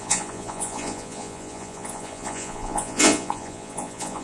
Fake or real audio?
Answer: fake